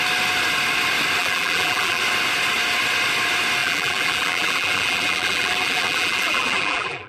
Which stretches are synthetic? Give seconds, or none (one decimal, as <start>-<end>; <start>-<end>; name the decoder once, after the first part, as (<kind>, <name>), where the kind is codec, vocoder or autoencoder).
1.2-2.0 (vocoder, BigVGAN v2); 3.6-7.1

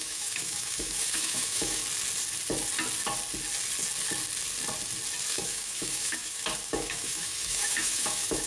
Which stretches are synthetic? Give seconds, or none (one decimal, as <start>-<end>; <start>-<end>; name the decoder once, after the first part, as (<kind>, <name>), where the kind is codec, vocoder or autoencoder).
0.0-1.8 (autoencoder, DAC-VAE); 5.3-8.5

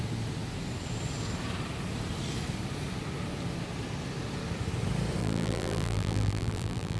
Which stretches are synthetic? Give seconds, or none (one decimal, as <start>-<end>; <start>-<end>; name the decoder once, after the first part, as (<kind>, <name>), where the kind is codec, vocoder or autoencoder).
5.2-7.0 (vocoder, BigVGAN v2)